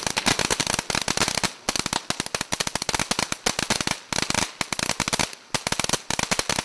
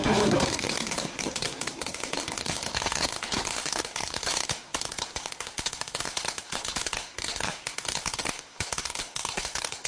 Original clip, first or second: first